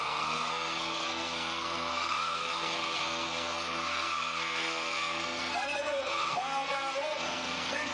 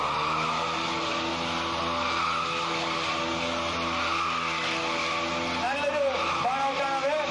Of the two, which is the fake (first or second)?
first